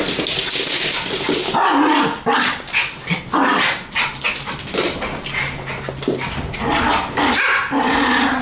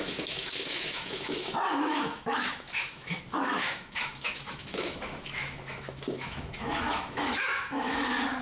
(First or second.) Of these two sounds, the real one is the first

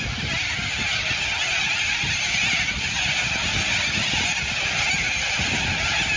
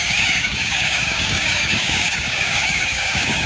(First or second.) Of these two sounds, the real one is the first